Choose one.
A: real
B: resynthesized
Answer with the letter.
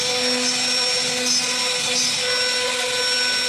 A